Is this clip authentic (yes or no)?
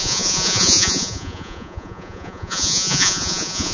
no